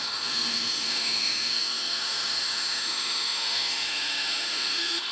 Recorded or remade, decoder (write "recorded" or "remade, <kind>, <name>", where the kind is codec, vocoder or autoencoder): remade, autoencoder, DAC-VAE